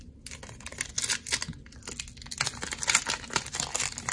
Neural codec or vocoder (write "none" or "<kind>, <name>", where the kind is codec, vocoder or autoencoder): none